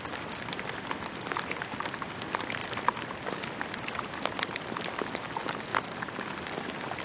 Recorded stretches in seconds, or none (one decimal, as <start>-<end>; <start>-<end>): 0.0-5.7; 6.6-7.0